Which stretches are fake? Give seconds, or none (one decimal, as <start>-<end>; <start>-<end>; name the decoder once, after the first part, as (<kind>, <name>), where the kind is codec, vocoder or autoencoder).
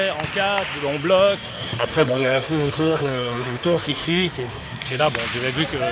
1.5-5.0 (codec, SNAC)